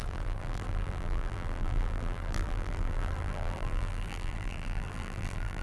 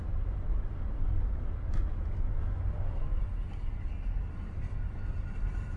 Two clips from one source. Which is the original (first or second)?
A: second